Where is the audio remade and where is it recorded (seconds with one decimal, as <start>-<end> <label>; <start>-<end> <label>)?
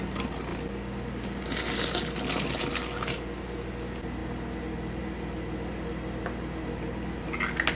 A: 0.0-0.5 recorded; 0.5-2.6 remade; 2.6-7.7 recorded